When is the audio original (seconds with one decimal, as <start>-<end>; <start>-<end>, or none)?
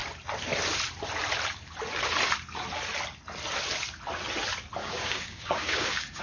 0.0-4.8